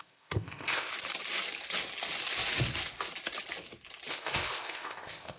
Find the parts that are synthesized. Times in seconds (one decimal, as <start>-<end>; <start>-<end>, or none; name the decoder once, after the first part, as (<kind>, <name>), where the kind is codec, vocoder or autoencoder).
0.0-0.9 (codec, ZipCodec); 4.1-5.4